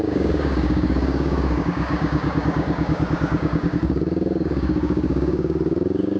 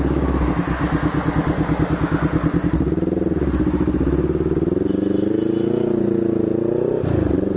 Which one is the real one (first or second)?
second